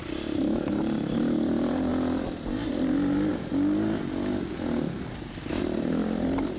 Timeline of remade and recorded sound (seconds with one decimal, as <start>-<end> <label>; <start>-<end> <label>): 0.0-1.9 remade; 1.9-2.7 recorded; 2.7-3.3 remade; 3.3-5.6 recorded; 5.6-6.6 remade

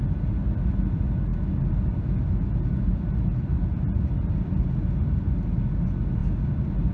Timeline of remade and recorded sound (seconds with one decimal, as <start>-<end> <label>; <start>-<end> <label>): 0.0-6.9 recorded

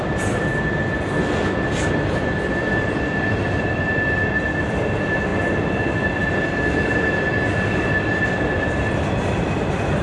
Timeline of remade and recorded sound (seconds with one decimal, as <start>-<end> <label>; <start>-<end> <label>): 0.0-0.5 remade; 0.5-1.7 recorded; 1.7-5.3 remade; 5.3-8.1 recorded; 8.1-10.0 remade

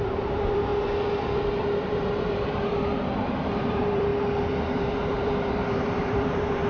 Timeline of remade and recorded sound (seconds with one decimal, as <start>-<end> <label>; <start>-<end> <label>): 0.0-0.7 remade; 0.7-1.9 recorded; 1.9-4.1 remade; 4.1-4.6 recorded; 4.6-6.7 remade

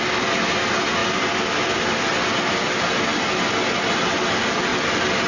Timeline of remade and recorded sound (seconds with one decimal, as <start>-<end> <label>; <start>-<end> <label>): 0.0-5.3 recorded

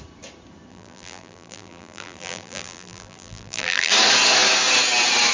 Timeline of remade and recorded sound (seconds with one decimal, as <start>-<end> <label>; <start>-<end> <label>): 0.0-0.7 recorded; 0.7-3.9 remade; 3.9-5.3 recorded

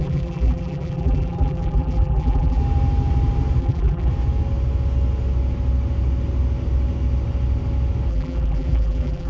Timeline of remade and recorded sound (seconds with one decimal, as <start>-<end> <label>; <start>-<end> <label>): 0.0-2.6 remade; 2.6-3.6 recorded; 3.6-4.1 remade; 4.1-8.1 recorded; 8.1-9.3 remade

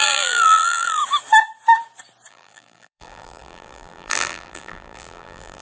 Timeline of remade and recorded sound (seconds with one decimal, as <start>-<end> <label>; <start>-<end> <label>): 0.0-1.0 remade; 1.0-2.3 recorded; 2.3-5.6 remade